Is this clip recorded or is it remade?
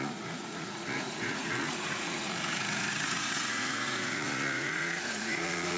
remade